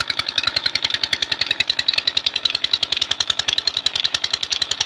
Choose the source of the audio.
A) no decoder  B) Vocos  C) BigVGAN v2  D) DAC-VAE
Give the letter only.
D